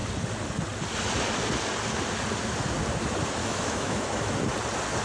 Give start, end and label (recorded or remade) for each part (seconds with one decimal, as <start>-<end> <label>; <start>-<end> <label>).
0.0-3.4 recorded; 3.4-4.3 remade; 4.3-5.0 recorded